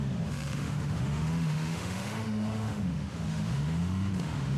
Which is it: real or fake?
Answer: fake